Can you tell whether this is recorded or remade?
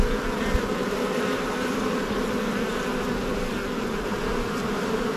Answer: recorded